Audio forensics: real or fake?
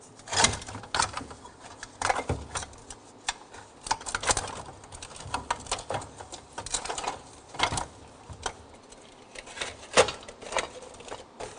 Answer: real